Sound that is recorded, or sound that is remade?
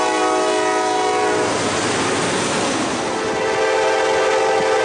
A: recorded